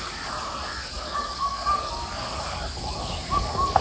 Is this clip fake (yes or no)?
yes